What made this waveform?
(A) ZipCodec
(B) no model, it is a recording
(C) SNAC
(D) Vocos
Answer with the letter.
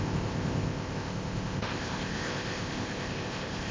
A